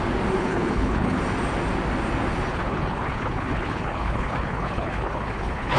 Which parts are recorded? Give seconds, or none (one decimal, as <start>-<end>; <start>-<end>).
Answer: 0.0-0.4; 1.2-2.5